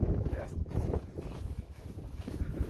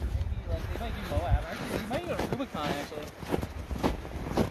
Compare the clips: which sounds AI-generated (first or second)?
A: first